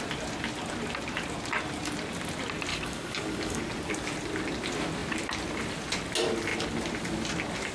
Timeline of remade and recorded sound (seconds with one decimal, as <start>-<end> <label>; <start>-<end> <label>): 0.0-2.7 recorded; 2.7-3.6 remade; 3.6-7.7 recorded